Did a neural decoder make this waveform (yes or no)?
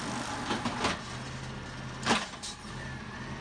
no